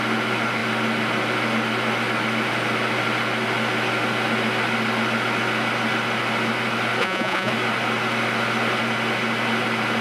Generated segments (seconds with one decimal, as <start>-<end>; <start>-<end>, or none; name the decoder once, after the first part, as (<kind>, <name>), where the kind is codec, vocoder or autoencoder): 7.0-7.5 (vocoder, Vocos)